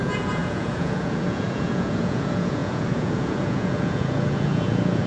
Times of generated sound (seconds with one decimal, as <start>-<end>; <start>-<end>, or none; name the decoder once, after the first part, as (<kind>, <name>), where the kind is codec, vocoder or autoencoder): 0.0-5.1 (vocoder, Vocos)